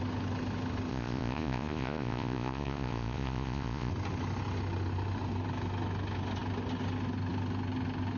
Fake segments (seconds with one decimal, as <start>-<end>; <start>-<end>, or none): 0.9-3.9